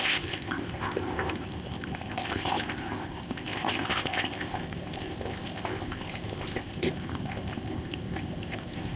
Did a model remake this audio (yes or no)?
yes